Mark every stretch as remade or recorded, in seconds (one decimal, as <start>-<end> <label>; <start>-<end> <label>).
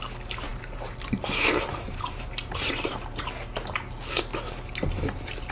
0.0-0.5 recorded; 0.5-3.2 remade; 3.2-5.5 recorded